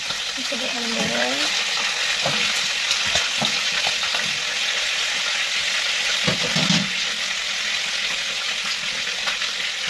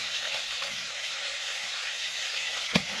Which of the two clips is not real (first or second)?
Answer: second